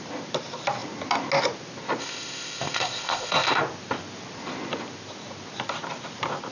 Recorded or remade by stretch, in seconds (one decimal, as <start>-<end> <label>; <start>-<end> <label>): 0.0-2.0 recorded; 2.0-3.6 remade; 3.6-6.5 recorded